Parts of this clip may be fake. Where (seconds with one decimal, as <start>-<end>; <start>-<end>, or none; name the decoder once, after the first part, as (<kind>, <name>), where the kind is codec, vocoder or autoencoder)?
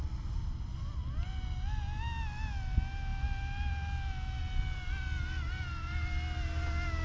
none